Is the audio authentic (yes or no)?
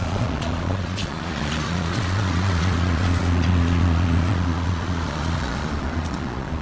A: no